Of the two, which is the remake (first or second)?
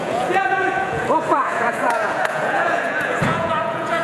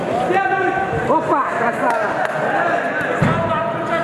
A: first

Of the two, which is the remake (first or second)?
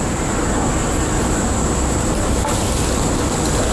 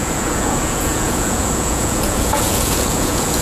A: second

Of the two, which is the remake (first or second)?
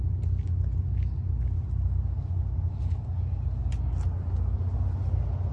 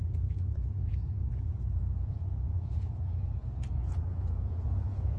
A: second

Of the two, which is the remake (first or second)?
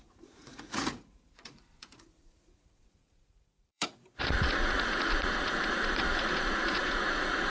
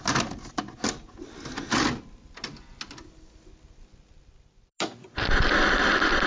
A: first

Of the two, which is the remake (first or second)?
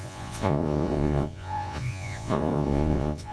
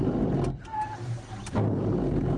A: first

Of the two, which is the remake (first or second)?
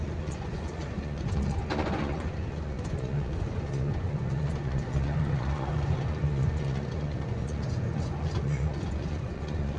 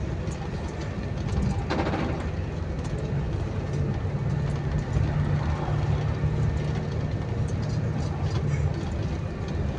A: first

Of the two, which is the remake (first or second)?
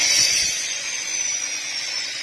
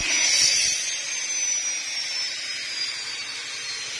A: first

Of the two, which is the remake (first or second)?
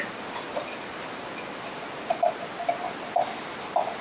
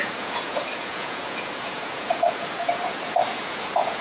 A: second